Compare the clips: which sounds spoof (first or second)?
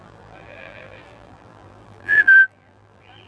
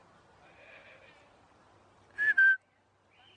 first